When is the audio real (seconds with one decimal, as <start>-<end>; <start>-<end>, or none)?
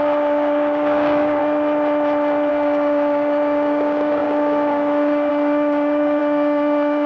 1.4-2.5